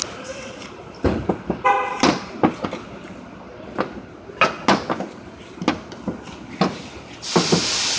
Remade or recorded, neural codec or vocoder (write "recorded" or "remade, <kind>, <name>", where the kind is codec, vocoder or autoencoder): recorded